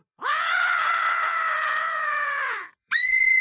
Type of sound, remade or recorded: remade